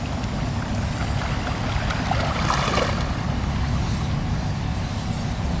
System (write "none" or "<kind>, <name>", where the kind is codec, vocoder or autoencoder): none